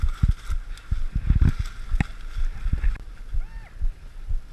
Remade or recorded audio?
recorded